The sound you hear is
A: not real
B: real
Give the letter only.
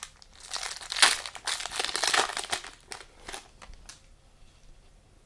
B